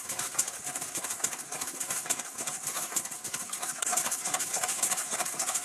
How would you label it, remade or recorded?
remade